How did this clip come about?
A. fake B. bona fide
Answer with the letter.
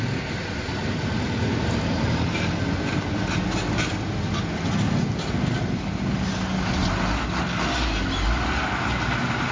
B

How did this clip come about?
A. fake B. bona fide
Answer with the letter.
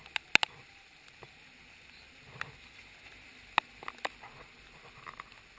B